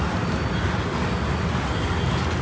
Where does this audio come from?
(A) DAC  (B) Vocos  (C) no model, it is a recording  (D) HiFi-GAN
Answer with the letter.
C